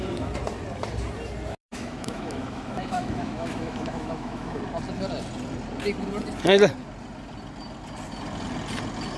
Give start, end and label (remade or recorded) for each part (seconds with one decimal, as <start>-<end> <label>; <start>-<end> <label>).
0.0-1.6 recorded; 1.6-4.6 remade; 4.6-9.2 recorded